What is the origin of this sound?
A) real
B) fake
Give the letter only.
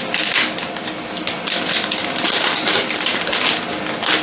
A